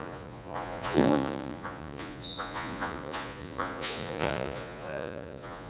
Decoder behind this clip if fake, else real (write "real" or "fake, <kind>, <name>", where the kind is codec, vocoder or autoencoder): fake, vocoder, Vocos